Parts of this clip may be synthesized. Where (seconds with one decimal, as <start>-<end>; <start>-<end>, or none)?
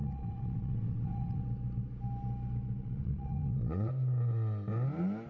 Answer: 0.0-1.4; 2.8-3.9